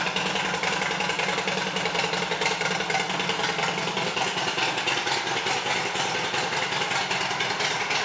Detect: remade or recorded recorded